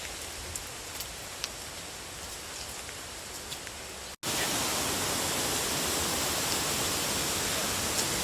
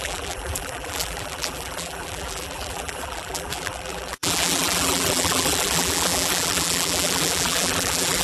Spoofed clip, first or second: second